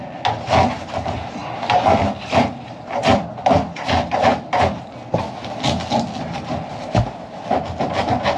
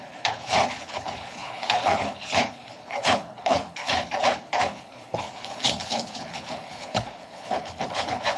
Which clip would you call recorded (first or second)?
first